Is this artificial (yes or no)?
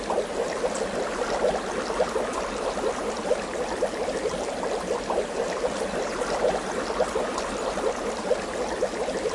no